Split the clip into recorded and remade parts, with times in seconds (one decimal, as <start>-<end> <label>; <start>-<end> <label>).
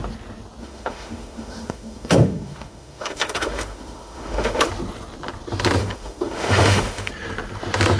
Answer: 0.0-0.6 recorded; 0.6-4.7 remade; 4.7-5.8 recorded; 5.8-7.1 remade; 7.1-8.0 recorded